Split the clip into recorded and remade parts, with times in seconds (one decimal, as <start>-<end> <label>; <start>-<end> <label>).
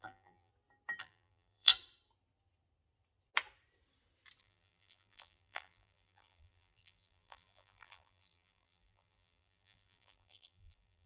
0.0-0.5 remade; 0.5-1.0 recorded; 1.0-1.7 remade; 1.7-4.4 recorded; 4.4-11.1 remade